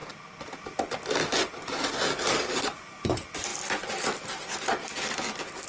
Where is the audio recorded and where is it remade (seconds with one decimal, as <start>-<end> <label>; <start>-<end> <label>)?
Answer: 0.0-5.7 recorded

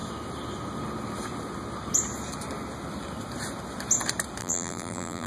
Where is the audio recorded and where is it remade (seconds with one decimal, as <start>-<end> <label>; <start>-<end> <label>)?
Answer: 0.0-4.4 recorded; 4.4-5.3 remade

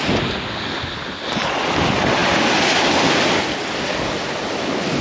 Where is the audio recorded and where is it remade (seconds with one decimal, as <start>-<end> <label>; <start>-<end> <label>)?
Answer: 0.0-5.0 recorded

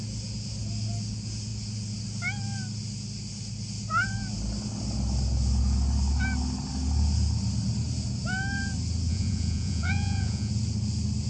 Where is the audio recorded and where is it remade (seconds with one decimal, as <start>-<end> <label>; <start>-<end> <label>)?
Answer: 0.0-9.1 recorded; 9.1-10.5 remade; 10.5-11.3 recorded